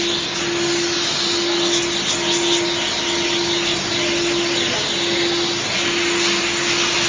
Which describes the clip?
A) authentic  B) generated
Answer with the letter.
A